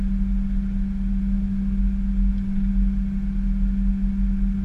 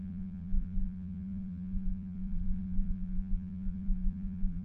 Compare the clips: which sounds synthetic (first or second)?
second